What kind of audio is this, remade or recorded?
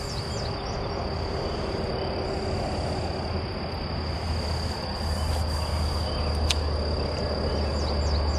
recorded